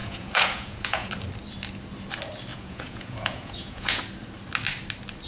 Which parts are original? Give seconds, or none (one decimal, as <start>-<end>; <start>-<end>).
1.1-2.5; 4.0-5.3